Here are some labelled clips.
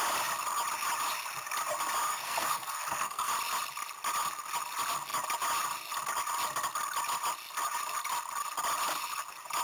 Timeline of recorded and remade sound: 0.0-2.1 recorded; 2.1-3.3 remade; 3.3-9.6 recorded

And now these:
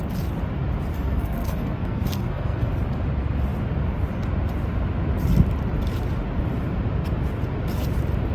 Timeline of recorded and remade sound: 0.0-0.9 recorded; 0.9-2.7 remade; 2.7-8.3 recorded

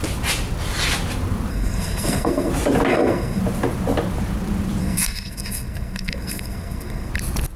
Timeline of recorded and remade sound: 0.0-1.5 recorded; 1.5-2.5 remade; 2.5-2.9 recorded; 2.9-3.4 remade; 3.4-4.8 recorded; 4.8-7.1 remade; 7.1-7.6 recorded